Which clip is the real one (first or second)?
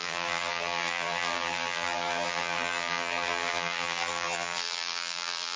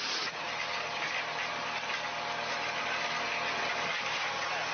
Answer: second